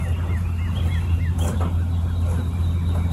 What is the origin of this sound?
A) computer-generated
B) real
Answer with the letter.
B